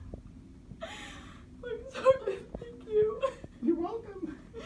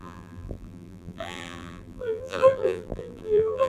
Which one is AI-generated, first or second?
second